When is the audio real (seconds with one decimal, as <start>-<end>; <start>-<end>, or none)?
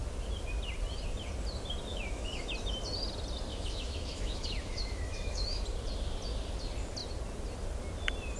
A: 0.0-1.9; 2.5-3.5; 5.6-8.4